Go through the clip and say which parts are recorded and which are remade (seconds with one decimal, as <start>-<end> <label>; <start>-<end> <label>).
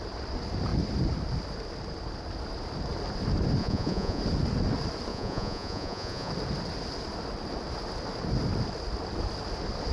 0.0-3.6 recorded; 3.6-4.2 remade; 4.2-5.1 recorded; 5.1-6.3 remade; 6.3-9.9 recorded